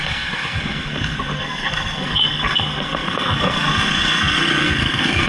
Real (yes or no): no